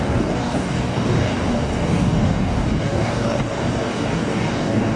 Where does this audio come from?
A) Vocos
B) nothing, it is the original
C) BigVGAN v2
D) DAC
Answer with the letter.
D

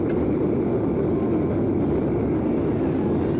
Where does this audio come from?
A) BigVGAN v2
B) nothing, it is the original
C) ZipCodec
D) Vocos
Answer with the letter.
B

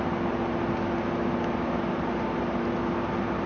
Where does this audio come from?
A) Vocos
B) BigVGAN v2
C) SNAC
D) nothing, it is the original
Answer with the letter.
D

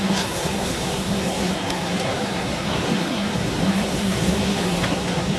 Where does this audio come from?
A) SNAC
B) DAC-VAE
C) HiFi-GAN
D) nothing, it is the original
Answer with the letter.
A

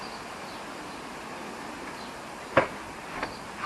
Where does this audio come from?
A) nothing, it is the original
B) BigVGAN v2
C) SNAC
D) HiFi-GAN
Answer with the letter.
A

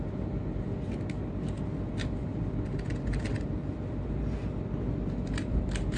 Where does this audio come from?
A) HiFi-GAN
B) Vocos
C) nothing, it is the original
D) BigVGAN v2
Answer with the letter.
C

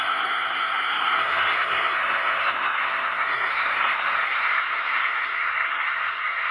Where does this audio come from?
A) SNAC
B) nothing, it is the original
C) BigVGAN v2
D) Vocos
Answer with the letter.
A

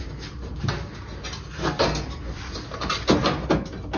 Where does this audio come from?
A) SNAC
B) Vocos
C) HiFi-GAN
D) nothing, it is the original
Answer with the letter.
D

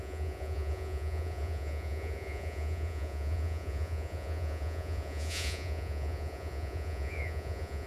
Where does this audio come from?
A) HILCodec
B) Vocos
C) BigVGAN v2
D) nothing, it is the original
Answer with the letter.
B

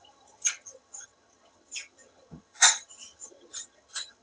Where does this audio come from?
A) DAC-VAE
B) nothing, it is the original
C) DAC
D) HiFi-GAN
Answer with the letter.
D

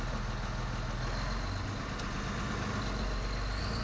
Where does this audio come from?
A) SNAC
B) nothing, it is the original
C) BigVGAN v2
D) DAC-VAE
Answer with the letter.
B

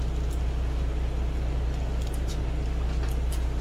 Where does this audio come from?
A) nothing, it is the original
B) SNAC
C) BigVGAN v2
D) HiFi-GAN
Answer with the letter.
A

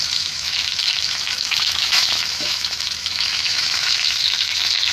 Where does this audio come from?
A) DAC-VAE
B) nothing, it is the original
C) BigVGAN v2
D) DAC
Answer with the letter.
A